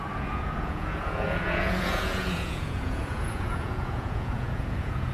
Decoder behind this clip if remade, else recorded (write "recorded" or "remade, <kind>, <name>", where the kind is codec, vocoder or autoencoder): remade, vocoder, Vocos